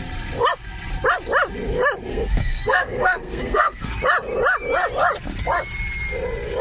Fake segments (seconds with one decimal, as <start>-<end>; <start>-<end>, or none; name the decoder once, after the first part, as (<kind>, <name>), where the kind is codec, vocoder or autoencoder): 2.1-3.9 (codec, SNAC)